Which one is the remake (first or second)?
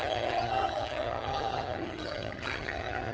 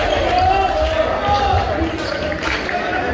first